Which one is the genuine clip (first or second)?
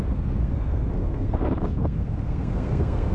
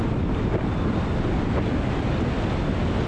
second